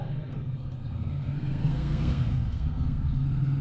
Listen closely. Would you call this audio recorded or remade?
remade